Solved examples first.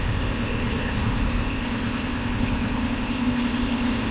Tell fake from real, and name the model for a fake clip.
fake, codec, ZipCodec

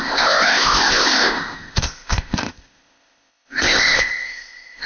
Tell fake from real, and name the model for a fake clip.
fake, codec, ZipCodec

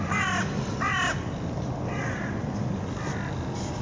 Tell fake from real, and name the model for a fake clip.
real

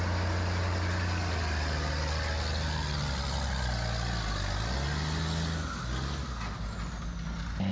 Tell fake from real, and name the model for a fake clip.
real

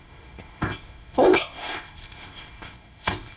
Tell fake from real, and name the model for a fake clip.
fake, codec, ZipCodec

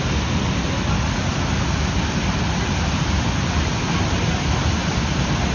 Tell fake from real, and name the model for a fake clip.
real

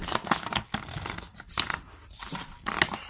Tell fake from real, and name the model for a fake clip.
real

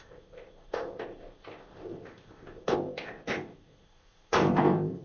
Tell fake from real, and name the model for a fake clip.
fake, codec, ZipCodec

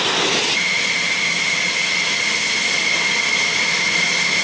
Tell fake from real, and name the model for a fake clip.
real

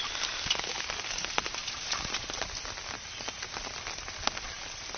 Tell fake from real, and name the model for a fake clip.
real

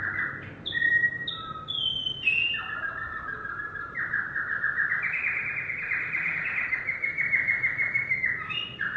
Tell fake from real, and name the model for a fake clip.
real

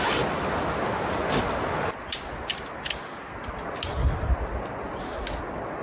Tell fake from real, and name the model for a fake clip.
real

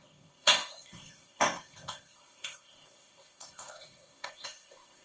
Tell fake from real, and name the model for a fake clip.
fake, codec, ZipCodec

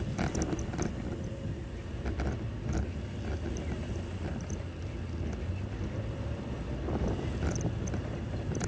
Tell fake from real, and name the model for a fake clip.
real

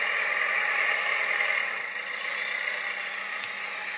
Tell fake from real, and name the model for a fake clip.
real